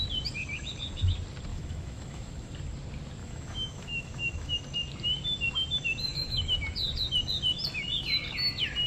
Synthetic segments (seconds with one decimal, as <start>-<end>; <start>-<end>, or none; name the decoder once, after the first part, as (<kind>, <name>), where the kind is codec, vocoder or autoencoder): 1.5-2.5 (autoencoder, DAC-VAE); 3.2-4.6; 6.1-6.6